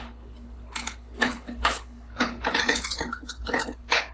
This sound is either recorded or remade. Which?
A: remade